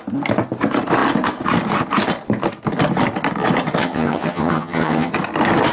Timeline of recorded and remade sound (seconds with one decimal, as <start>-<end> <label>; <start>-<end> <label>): 0.0-3.8 recorded; 3.8-5.1 remade; 5.1-5.7 recorded